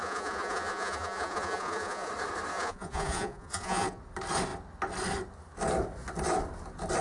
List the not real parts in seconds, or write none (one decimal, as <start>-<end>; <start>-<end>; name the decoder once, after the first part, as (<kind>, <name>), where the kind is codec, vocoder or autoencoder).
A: 0.0-2.1 (vocoder, Vocos); 2.5-4.0